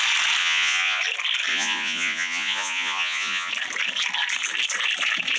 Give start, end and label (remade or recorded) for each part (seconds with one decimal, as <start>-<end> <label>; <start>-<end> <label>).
0.0-0.4 recorded; 0.4-1.0 remade; 1.0-1.5 recorded; 1.5-3.5 remade; 3.5-5.4 recorded